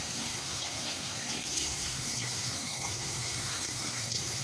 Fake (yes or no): yes